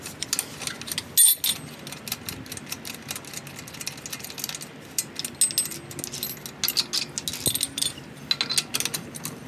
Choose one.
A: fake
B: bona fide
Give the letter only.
B